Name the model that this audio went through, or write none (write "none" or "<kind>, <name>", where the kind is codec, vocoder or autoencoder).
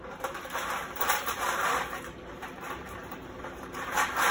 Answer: vocoder, BigVGAN v2